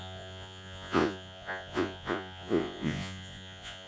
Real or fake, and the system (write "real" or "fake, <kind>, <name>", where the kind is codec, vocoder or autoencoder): fake, vocoder, Vocos